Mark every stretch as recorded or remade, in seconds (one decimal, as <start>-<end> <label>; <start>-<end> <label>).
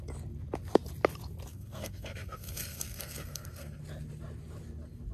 0.0-1.5 recorded; 1.5-3.8 remade; 3.8-5.1 recorded